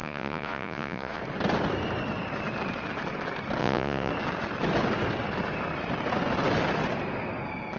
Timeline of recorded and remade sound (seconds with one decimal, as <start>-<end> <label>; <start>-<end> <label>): 0.0-1.2 remade; 1.2-3.6 recorded; 3.6-4.1 remade; 4.1-7.8 recorded